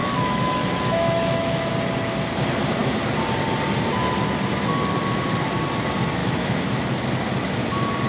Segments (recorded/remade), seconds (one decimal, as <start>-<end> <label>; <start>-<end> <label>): 0.0-1.7 remade; 1.7-6.2 recorded; 6.2-6.8 remade; 6.8-8.1 recorded

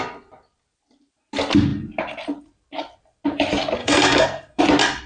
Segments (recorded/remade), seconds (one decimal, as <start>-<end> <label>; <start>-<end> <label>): 0.0-3.8 recorded; 3.8-4.6 remade; 4.6-5.1 recorded